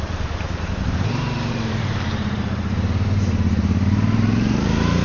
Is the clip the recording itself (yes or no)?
no